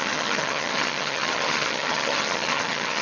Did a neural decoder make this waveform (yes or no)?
yes